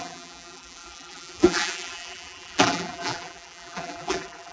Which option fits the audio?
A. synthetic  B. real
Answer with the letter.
A